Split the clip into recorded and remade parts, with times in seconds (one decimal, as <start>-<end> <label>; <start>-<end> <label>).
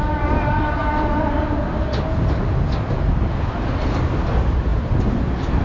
0.0-5.6 recorded